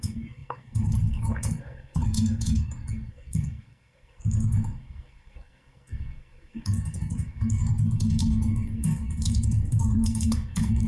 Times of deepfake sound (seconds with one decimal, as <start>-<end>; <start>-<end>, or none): 0.0-10.9